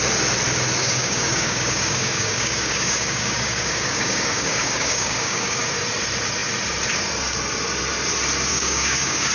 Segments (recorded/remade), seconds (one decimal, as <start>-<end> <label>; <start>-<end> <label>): 0.0-0.8 recorded; 0.8-5.6 remade; 5.6-8.5 recorded; 8.5-9.3 remade